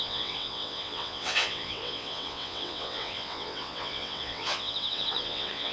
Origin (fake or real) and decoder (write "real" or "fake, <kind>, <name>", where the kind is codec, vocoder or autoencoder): fake, vocoder, WaveNeXt